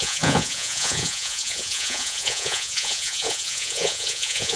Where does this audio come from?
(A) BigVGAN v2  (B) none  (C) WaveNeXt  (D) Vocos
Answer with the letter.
D